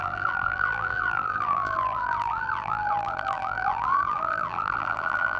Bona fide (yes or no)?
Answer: no